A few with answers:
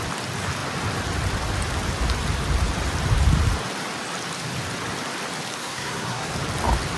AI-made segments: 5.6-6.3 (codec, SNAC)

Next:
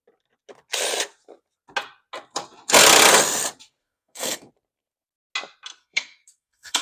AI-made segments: 3.8-4.5 (codec, SNAC); 5.8-6.8

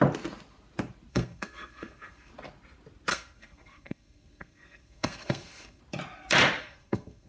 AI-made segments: 1.1-2.3 (codec, SNAC); 3.1-5.8; 6.6-7.3